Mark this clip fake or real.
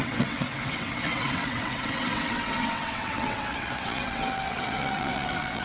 fake